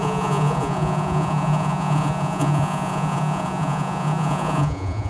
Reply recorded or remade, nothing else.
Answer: remade